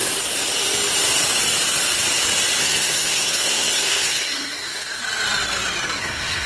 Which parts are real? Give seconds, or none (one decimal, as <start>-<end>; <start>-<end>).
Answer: 0.0-2.6; 5.0-6.0